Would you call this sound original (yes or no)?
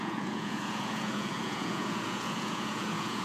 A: no